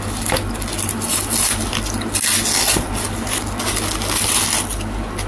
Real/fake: real